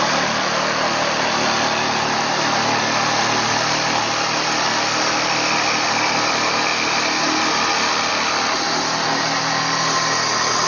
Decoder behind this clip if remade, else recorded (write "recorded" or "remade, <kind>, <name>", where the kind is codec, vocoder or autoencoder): recorded